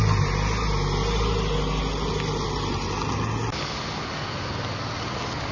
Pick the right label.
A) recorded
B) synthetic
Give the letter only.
A